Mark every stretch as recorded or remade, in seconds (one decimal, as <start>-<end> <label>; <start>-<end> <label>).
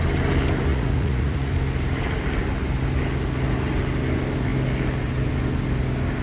0.0-0.7 recorded; 0.7-1.5 remade; 1.5-6.2 recorded